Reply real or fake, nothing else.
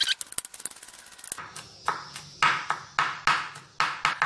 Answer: real